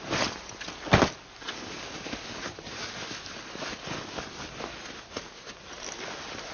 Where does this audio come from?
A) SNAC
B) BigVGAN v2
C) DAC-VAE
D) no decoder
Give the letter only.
D